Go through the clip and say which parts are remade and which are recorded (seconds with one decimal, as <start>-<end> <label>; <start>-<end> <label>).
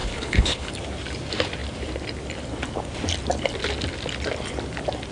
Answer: 0.0-0.7 remade; 0.7-5.1 recorded